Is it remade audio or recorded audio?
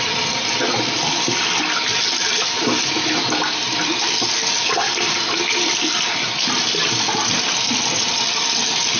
recorded